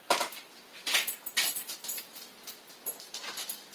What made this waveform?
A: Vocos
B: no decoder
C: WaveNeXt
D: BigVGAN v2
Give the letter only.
D